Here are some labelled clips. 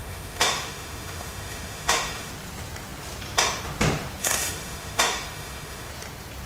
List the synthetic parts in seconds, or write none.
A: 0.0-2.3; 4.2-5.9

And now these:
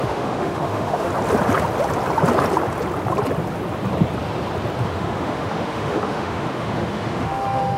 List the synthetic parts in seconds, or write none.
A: 0.0-1.1; 4.8-7.8

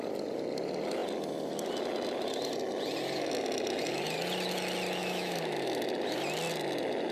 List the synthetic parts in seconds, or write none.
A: 5.0-5.8